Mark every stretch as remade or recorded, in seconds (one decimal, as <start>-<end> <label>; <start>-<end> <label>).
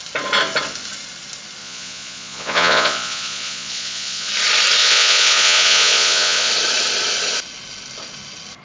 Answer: 0.0-1.6 recorded; 1.6-4.3 remade; 4.3-4.8 recorded; 4.8-6.5 remade; 6.5-8.6 recorded